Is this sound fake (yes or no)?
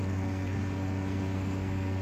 yes